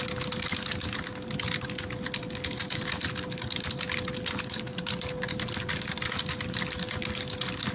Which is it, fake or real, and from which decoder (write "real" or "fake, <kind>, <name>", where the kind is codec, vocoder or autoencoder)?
real